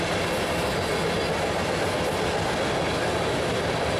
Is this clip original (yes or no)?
yes